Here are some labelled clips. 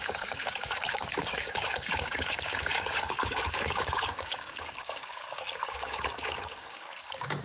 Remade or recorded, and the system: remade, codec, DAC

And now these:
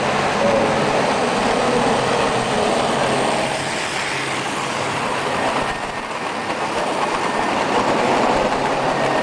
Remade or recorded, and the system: recorded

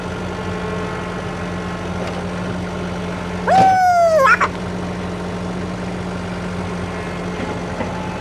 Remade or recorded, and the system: recorded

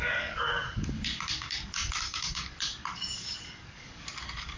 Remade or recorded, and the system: remade, codec, DAC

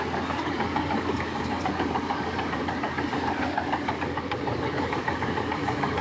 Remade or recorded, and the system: remade, codec, DAC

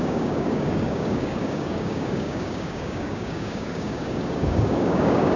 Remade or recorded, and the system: remade, codec, DAC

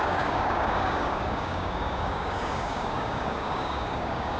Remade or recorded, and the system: remade, codec, DAC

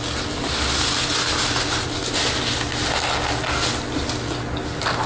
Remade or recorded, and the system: recorded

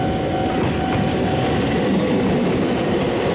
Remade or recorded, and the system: recorded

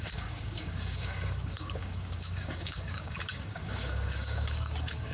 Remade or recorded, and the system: remade, codec, DAC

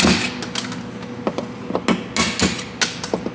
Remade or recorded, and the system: recorded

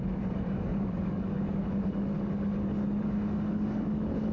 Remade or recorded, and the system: remade, codec, DAC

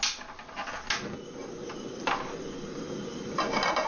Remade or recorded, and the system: recorded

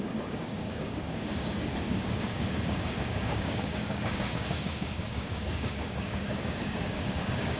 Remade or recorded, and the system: remade, codec, DAC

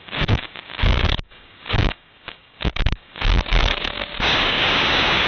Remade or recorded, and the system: remade, codec, DAC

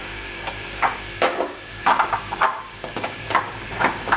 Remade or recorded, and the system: remade, codec, DAC